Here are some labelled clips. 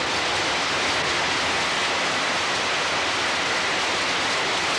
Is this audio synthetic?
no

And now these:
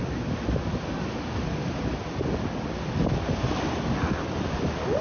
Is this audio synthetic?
no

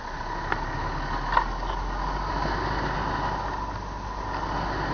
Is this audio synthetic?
no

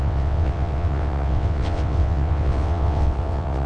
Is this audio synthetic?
yes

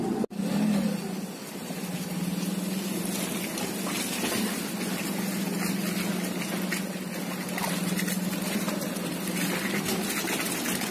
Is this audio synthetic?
no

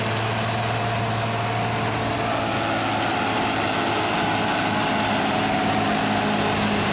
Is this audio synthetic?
no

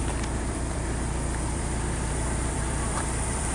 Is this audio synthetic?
yes